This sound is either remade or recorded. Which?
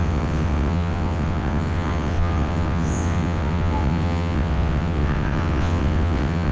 remade